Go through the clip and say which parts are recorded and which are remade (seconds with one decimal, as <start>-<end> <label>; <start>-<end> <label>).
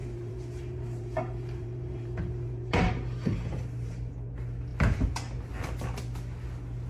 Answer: 0.0-4.1 remade; 4.1-6.9 recorded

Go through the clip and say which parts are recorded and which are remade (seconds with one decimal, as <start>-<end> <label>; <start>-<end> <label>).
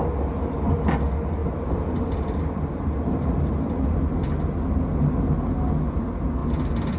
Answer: 0.0-1.4 recorded; 1.4-3.6 remade; 3.6-7.0 recorded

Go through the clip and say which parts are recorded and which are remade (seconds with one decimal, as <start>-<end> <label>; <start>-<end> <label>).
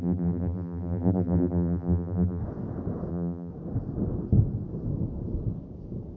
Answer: 0.0-2.4 remade; 2.4-3.1 recorded; 3.1-3.5 remade; 3.5-6.2 recorded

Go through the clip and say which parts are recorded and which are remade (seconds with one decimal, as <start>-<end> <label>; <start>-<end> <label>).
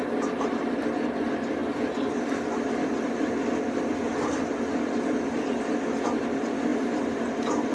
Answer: 0.0-7.7 recorded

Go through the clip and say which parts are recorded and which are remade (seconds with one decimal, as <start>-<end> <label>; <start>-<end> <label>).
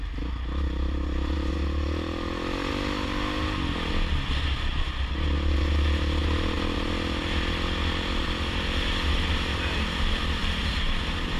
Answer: 0.0-10.6 recorded; 10.6-11.4 remade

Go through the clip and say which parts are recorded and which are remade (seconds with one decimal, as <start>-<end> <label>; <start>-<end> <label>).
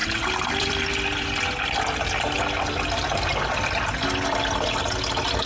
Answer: 0.0-1.6 remade; 1.6-3.3 recorded; 3.3-3.9 remade; 3.9-5.5 recorded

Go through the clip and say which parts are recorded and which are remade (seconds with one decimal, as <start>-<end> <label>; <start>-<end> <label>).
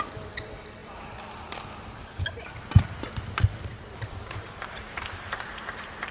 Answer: 0.0-4.1 recorded; 4.1-6.1 remade